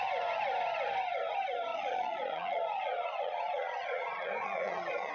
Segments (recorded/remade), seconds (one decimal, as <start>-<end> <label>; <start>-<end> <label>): 0.0-1.7 recorded; 1.7-5.1 remade